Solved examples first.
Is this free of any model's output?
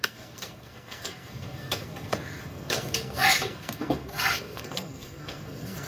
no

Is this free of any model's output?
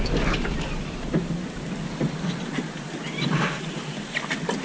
yes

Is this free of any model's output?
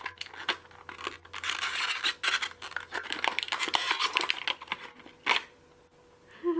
yes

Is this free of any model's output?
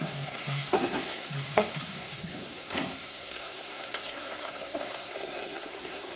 no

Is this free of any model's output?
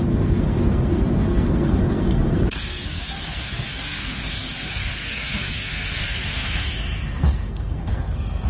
no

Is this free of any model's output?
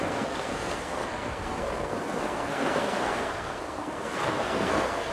no